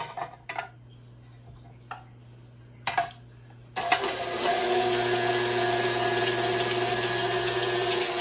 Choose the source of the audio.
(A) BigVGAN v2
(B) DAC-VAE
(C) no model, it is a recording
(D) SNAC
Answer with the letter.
C